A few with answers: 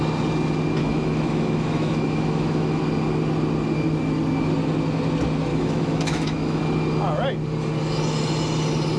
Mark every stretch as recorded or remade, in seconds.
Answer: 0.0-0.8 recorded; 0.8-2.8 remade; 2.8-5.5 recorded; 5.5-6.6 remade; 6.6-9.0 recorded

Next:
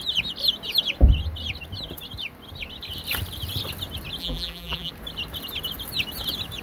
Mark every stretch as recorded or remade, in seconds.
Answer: 0.0-4.2 recorded; 4.2-4.9 remade; 4.9-6.6 recorded

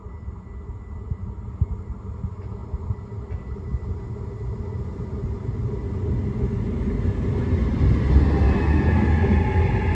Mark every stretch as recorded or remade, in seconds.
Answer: 0.0-9.9 recorded

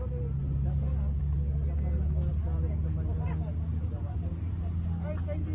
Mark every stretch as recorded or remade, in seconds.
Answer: 0.0-5.5 recorded

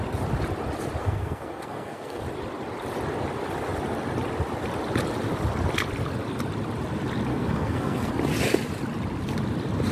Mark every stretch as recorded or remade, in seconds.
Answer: 0.0-1.0 recorded; 1.0-2.2 remade; 2.2-7.3 recorded; 7.3-8.1 remade; 8.1-9.9 recorded

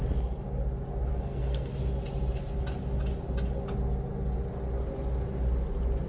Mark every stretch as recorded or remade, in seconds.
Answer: 0.0-1.1 recorded; 1.1-1.7 remade; 1.7-6.1 recorded

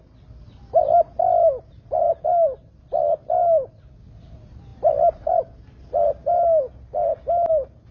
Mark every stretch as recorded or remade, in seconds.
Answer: 0.0-7.9 recorded